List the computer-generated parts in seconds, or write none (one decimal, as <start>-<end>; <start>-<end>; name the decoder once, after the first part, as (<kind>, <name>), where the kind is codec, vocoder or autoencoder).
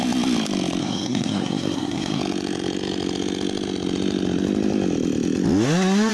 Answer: 0.8-2.2 (codec, SNAC)